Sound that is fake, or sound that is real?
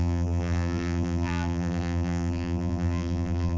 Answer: fake